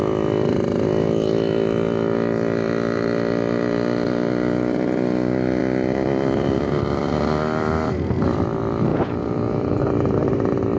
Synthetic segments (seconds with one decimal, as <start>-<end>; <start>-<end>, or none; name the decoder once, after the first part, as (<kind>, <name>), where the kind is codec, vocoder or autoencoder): 8.9-9.8 (vocoder, Vocos)